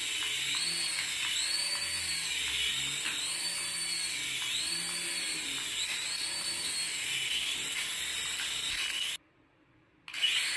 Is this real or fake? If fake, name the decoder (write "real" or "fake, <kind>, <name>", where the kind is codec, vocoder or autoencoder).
real